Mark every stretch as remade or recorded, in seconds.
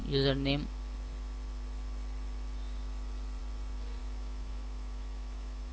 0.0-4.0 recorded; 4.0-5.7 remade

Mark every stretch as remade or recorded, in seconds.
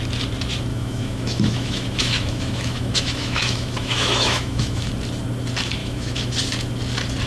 0.0-0.7 recorded; 0.7-4.9 remade; 4.9-5.8 recorded; 5.8-6.3 remade; 6.3-7.3 recorded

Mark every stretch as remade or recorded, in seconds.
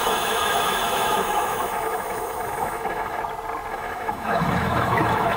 0.0-3.2 remade; 3.2-3.7 recorded; 3.7-5.4 remade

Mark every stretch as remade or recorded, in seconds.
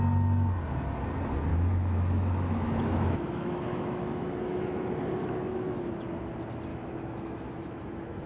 0.0-1.5 recorded; 1.5-5.0 remade; 5.0-5.4 recorded; 5.4-6.1 remade; 6.1-6.7 recorded; 6.7-8.3 remade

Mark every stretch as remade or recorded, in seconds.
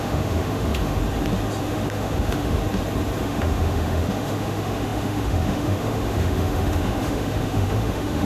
0.0-1.0 remade; 1.0-1.6 recorded; 1.6-2.6 remade; 2.6-3.2 recorded; 3.2-8.3 remade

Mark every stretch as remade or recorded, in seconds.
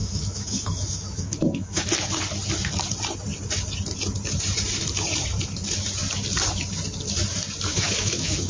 0.0-2.0 remade; 2.0-7.7 recorded; 7.7-8.5 remade